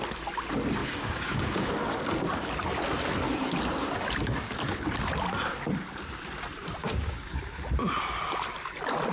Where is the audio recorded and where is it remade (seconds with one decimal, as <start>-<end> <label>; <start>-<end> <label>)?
0.0-0.8 recorded; 0.8-1.7 remade; 1.7-6.8 recorded; 6.8-7.4 remade; 7.4-9.1 recorded